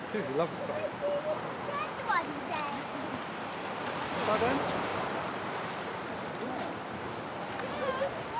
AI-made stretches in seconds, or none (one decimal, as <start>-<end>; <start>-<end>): 4.9-6.3